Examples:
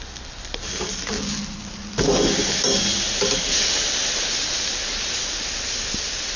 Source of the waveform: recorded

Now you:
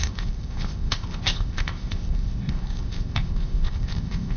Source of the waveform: remade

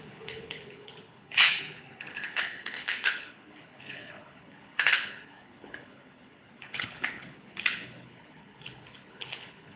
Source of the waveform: remade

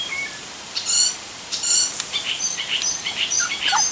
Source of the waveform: remade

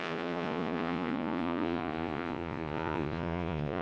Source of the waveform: remade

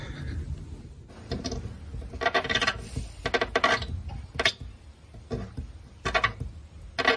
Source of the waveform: recorded